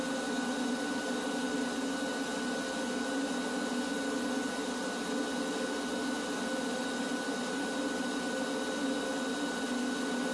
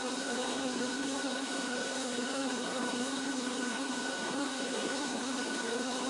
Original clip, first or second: first